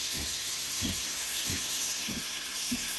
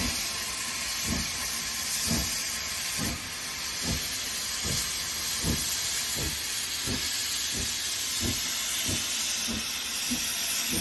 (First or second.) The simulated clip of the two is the first